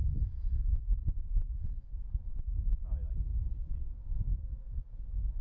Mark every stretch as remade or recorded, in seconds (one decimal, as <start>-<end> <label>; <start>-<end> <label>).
0.0-0.9 recorded; 0.9-1.4 remade; 1.4-2.7 recorded; 2.7-3.3 remade; 3.3-5.4 recorded